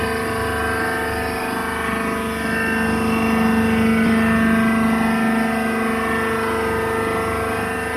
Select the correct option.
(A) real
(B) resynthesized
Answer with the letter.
A